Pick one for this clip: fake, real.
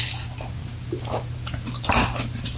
real